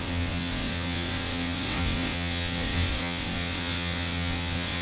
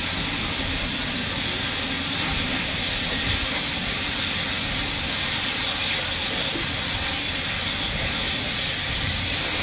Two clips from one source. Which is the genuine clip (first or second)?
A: second